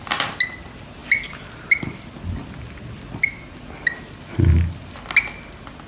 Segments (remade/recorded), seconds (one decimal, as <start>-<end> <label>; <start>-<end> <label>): 0.0-5.9 recorded